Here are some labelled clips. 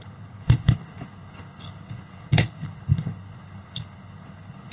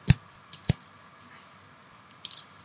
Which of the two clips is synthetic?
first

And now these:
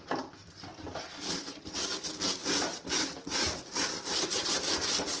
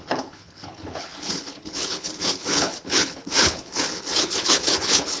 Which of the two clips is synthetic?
second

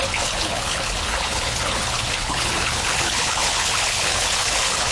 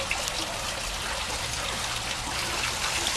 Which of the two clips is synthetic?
first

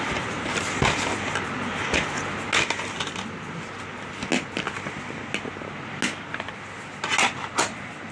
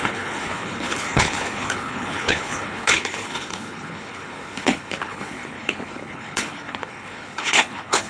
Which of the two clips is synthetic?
second